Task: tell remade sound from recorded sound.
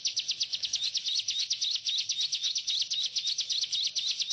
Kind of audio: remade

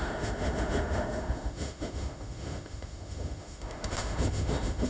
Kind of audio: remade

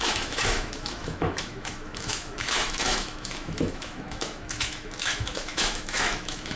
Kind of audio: remade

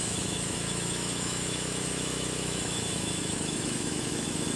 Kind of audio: remade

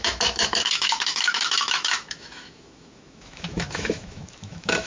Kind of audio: remade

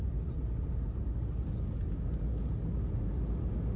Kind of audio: recorded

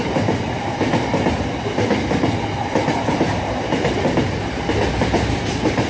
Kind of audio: recorded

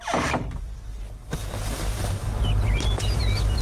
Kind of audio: recorded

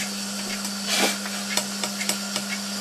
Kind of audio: recorded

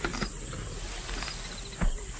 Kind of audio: recorded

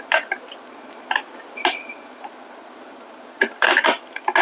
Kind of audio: recorded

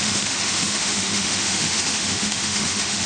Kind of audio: remade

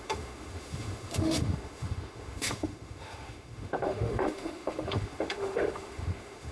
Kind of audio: remade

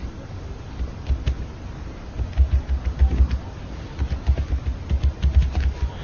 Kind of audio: recorded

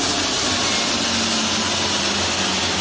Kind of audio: recorded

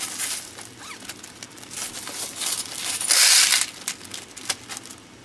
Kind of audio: recorded